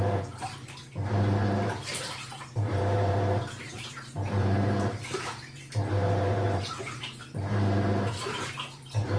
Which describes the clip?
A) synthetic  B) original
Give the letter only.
A